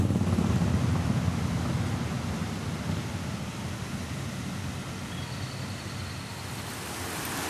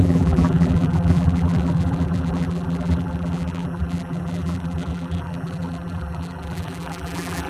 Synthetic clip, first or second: second